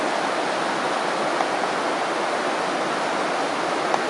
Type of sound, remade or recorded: recorded